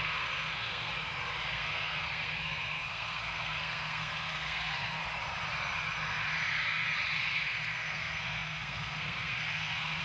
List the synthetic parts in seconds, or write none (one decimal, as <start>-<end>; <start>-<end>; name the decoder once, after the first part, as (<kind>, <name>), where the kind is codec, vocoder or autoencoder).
0.0-0.9 (codec, SNAC); 1.5-5.0; 7.3-10.0